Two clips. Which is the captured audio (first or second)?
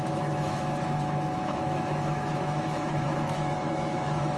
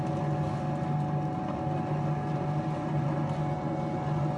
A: second